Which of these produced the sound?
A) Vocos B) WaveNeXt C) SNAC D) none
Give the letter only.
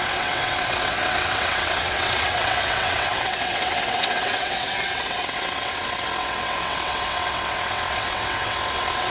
B